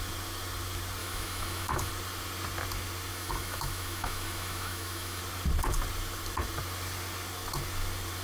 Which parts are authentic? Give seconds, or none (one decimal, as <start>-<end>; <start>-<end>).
0.0-1.0; 1.9-3.1; 5.2-8.2